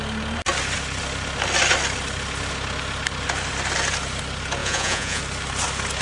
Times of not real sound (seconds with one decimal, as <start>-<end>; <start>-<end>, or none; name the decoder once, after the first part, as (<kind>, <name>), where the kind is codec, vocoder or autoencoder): 4.6-5.2 (vocoder, Vocos)